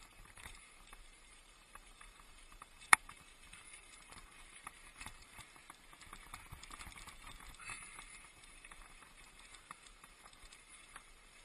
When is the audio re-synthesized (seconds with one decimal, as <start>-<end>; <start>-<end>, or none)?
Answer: 0.0-5.6; 7.5-11.4